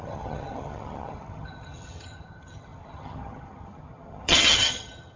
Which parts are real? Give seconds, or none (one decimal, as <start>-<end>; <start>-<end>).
none

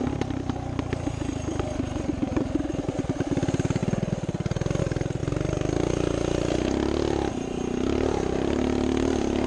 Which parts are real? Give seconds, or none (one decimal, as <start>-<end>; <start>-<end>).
0.0-9.5

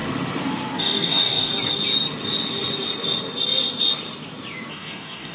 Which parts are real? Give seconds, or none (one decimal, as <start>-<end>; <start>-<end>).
0.0-0.8; 1.5-4.7

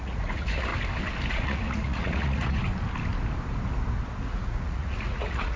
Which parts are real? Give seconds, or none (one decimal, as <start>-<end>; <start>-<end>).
0.7-1.3; 2.6-4.3

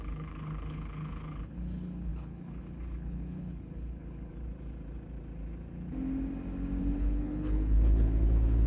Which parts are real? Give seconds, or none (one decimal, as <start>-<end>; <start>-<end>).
4.3-6.8

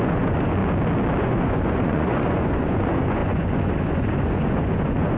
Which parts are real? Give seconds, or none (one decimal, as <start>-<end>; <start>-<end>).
0.6-1.2

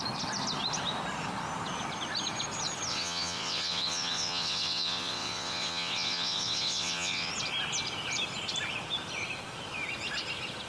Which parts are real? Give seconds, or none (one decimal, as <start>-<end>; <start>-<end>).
0.0-2.9; 7.3-10.7

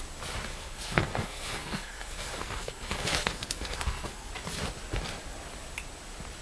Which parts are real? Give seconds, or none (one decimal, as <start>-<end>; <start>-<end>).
0.0-0.5; 4.3-6.4